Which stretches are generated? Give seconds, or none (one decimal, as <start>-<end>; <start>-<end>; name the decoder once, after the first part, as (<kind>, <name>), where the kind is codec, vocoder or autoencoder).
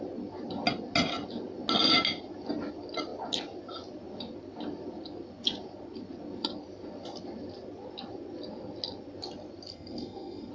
9.7-10.5 (codec, SNAC)